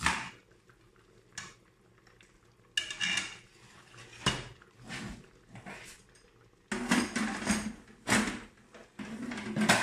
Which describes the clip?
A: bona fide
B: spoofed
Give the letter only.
A